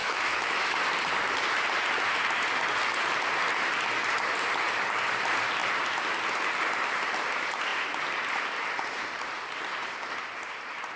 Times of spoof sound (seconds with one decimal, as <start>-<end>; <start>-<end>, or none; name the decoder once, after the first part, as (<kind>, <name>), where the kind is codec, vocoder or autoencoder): 0.0-0.8 (autoencoder, DAC-VAE)